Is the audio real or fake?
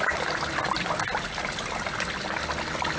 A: real